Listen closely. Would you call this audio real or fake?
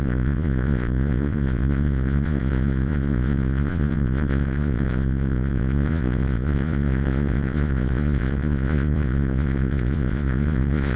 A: fake